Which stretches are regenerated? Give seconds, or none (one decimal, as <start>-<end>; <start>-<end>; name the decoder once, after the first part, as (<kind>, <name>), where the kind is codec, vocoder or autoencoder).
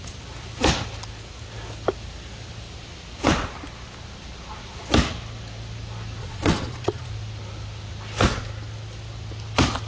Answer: 6.2-7.1 (vocoder, Vocos)